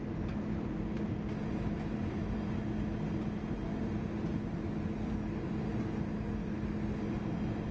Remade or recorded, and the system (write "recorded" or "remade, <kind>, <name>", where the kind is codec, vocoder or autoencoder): recorded